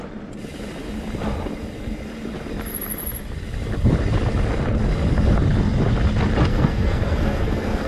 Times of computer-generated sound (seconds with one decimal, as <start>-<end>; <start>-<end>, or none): 6.5-7.9